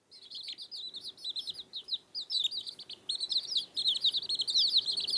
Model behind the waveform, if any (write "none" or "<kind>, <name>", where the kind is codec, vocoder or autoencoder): none